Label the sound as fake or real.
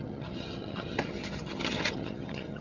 fake